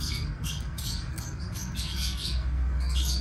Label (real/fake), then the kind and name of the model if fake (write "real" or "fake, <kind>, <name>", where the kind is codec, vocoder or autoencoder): fake, codec, SNAC